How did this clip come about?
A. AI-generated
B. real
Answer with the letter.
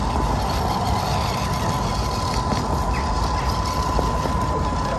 B